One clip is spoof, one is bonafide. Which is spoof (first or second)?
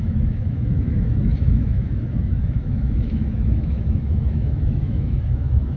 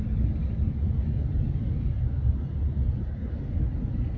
first